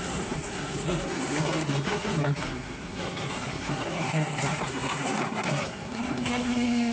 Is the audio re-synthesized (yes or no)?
yes